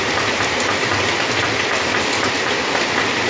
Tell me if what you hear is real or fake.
real